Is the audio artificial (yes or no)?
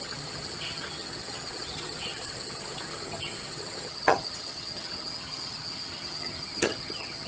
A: yes